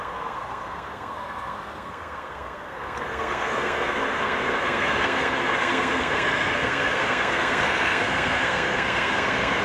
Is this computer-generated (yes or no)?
yes